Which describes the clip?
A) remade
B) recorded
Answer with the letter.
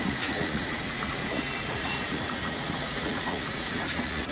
A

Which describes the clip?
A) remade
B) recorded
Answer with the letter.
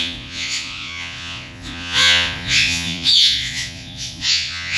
A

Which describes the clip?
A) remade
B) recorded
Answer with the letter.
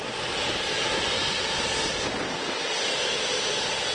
B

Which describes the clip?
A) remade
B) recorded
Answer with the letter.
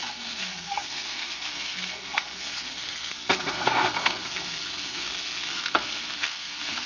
A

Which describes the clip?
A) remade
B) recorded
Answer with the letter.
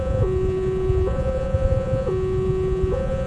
A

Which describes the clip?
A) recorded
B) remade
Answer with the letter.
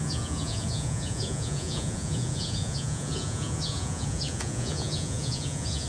B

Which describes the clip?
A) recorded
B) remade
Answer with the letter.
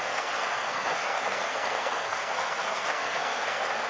B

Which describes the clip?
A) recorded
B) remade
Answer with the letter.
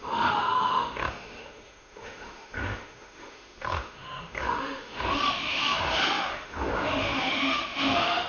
B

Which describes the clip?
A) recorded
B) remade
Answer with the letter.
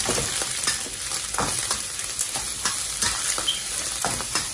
A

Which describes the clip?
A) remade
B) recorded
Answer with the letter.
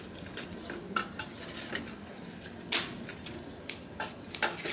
B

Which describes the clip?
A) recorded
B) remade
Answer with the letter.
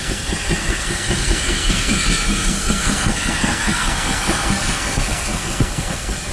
B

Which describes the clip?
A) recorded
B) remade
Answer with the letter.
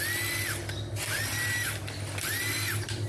A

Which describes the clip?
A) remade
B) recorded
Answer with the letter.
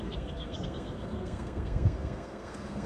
A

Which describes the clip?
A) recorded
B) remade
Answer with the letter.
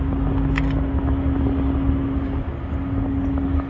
A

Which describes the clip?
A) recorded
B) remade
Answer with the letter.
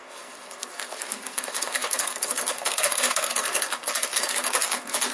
B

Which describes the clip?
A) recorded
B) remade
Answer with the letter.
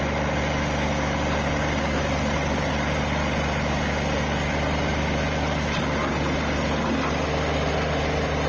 A